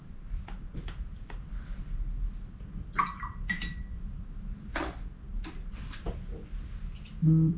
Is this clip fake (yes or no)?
no